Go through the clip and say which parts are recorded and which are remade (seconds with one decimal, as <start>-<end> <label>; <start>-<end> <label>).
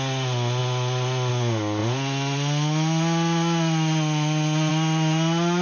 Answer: 0.0-5.6 recorded